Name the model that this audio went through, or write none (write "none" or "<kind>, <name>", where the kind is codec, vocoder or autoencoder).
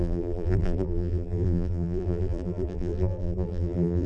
vocoder, BigVGAN v2